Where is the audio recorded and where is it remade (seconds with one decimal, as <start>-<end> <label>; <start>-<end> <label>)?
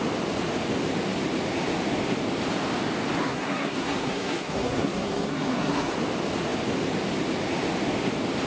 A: 0.0-3.2 recorded; 3.2-5.9 remade; 5.9-8.5 recorded